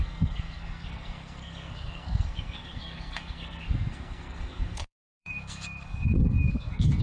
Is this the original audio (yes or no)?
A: no